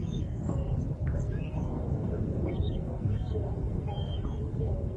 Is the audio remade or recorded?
remade